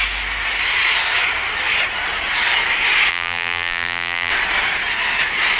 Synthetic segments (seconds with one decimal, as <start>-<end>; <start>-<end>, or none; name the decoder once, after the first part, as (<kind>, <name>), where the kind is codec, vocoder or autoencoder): 3.1-4.3 (vocoder, BigVGAN v2)